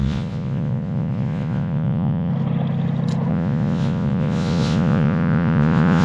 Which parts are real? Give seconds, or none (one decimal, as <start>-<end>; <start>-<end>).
2.3-3.3